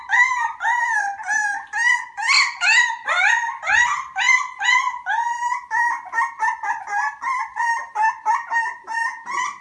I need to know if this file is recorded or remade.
recorded